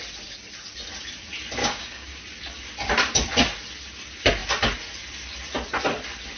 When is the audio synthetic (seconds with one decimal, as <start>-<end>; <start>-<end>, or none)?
1.6-2.2